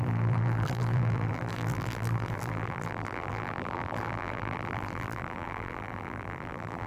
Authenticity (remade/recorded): remade